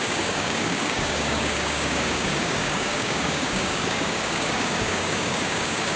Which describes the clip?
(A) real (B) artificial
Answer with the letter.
B